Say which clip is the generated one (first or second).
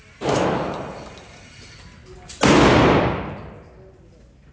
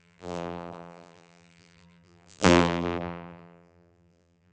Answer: second